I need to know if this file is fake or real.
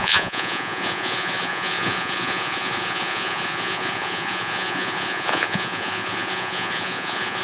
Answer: fake